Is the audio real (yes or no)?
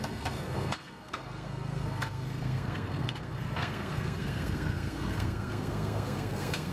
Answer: no